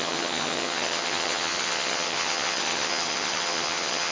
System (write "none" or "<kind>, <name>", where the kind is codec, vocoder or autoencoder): vocoder, HiFi-GAN